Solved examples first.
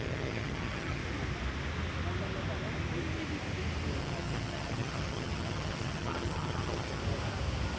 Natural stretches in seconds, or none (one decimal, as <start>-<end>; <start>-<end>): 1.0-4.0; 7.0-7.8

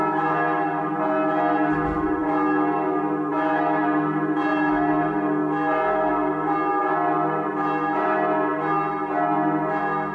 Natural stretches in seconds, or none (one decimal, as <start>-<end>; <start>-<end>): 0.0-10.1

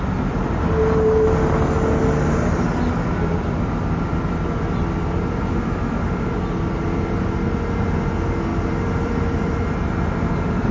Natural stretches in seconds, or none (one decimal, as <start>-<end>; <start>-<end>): 0.0-8.5; 10.0-10.7